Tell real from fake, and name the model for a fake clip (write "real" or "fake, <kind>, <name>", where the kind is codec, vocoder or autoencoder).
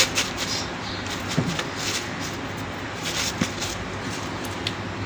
real